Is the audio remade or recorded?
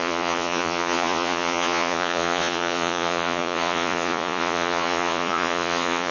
remade